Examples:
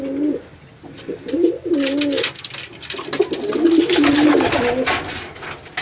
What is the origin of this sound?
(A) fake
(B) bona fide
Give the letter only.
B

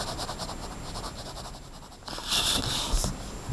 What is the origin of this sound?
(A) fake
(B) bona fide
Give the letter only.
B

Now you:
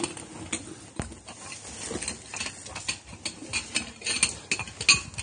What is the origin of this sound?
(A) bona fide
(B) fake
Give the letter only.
A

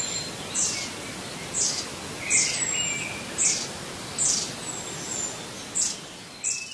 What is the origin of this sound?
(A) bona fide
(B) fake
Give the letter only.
A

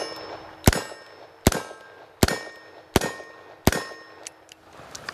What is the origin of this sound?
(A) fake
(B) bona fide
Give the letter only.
B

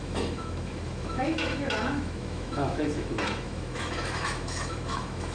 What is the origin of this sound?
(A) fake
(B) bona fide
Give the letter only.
A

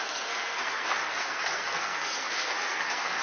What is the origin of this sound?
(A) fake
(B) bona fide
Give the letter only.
A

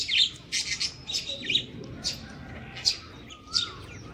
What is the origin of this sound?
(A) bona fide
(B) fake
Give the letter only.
A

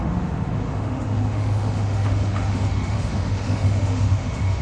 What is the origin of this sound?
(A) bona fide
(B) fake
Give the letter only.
B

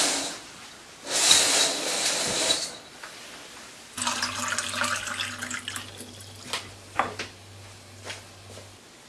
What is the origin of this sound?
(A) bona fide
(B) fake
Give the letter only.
A